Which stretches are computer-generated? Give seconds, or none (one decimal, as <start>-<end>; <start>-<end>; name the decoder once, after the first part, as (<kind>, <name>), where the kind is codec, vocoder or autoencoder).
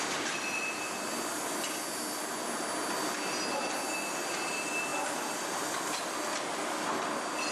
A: none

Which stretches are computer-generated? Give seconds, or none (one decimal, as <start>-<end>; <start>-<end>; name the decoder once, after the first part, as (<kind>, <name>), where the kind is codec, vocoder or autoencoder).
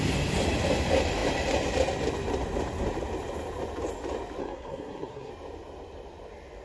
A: 4.4-5.3 (codec, SNAC)